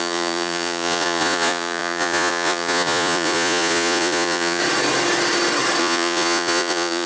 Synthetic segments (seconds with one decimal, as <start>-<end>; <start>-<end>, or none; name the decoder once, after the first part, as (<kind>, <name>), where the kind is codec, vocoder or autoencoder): 0.0-4.6 (vocoder, Vocos); 5.8-7.1